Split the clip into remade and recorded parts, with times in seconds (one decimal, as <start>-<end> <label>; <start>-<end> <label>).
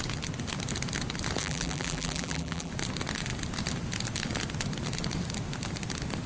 0.0-1.4 recorded; 1.4-2.7 remade; 2.7-6.3 recorded